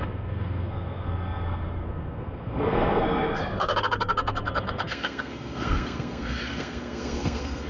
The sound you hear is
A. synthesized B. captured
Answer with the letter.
A